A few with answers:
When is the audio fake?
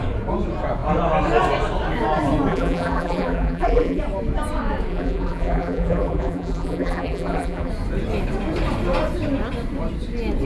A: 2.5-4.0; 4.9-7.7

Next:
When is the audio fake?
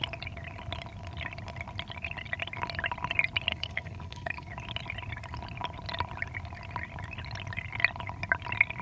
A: 3.5-4.5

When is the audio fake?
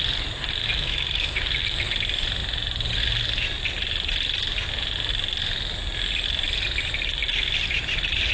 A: 0.6-1.9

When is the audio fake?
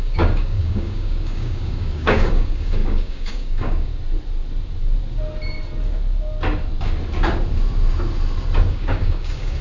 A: 0.0-3.9; 8.7-9.6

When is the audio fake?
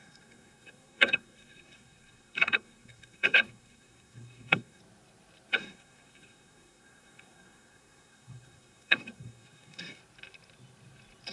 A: 0.0-4.8; 5.5-10.0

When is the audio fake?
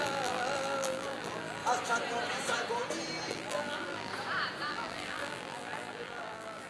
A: 0.0-1.6; 3.3-4.1; 4.7-6.7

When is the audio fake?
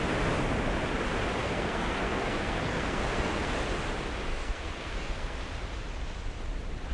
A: 1.4-3.5; 4.3-5.4